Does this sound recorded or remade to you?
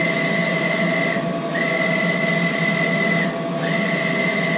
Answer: recorded